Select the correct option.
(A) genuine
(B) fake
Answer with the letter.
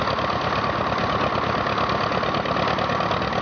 A